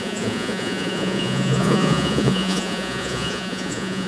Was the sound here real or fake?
fake